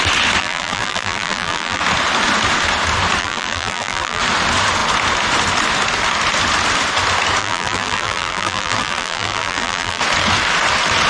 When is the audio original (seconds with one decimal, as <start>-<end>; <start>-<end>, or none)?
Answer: 0.0-0.4; 1.8-3.2; 4.2-7.4; 10.0-11.1